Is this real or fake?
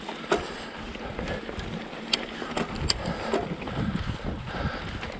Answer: real